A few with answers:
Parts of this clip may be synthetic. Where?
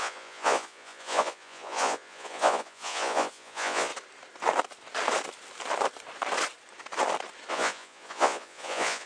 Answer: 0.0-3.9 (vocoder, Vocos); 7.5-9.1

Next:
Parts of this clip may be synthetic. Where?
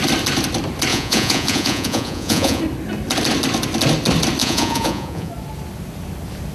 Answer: 0.9-2.6 (vocoder, Vocos); 4.4-5.3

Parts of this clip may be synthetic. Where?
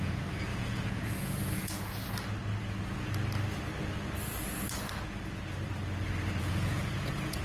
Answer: 0.0-2.0 (vocoder, Vocos); 6.4-7.4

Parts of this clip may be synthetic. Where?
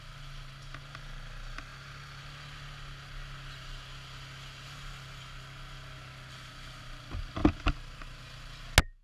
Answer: none